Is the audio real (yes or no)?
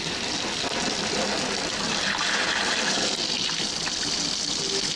yes